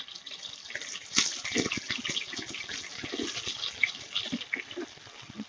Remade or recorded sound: recorded